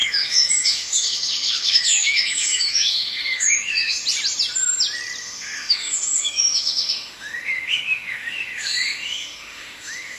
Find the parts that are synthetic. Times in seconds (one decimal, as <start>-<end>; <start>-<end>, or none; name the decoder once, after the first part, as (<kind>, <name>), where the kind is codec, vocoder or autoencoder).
0.0-4.0 (autoencoder, DAC-VAE); 5.2-10.2

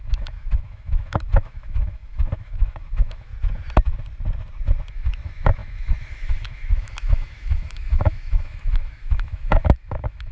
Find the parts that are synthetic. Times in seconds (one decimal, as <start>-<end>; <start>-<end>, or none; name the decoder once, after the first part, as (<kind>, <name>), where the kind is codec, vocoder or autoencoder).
0.0-3.3 (autoencoder, DAC-VAE); 4.9-10.3

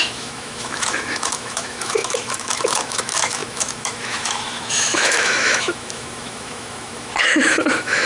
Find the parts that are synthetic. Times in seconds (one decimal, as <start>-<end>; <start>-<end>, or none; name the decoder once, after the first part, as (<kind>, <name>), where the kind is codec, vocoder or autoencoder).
0.0-8.1 (autoencoder, DAC-VAE)

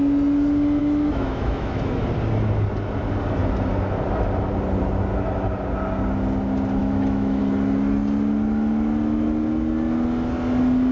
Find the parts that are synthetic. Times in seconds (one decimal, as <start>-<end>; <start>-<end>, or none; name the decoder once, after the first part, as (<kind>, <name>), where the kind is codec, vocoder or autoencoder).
0.8-2.0 (autoencoder, DAC-VAE); 6.8-7.4

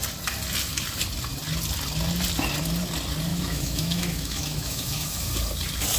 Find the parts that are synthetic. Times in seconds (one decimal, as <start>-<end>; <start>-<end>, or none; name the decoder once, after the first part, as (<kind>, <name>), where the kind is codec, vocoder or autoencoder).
3.3-5.3 (autoencoder, DAC-VAE)

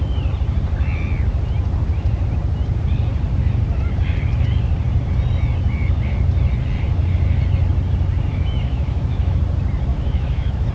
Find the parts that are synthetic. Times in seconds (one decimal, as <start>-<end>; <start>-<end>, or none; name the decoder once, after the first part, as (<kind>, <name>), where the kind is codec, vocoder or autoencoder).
8.3-9.4 (autoencoder, DAC-VAE); 9.9-10.7

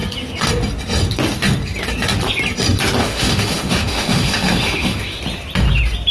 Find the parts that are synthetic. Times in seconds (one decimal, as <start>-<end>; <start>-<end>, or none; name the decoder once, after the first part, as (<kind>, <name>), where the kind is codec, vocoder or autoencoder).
3.0-5.2 (autoencoder, DAC-VAE)

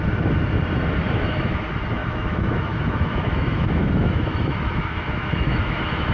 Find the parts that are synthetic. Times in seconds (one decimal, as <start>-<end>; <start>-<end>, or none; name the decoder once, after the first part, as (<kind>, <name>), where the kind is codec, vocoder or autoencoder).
1.0-1.6 (autoencoder, DAC-VAE); 2.0-6.1